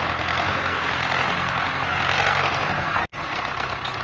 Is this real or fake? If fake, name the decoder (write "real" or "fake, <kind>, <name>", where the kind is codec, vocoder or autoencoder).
fake, codec, SNAC